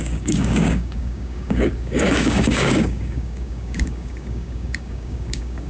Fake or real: fake